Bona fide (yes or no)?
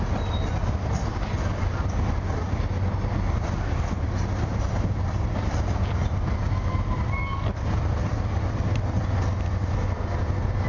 yes